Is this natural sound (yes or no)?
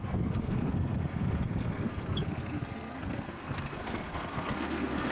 no